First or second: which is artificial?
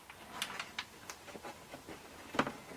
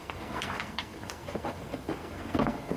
second